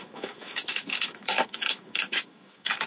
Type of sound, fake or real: fake